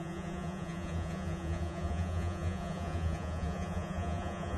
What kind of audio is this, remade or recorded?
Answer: remade